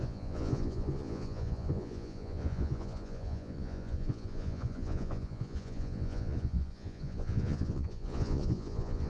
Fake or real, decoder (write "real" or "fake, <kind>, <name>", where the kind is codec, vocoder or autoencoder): fake, vocoder, Vocos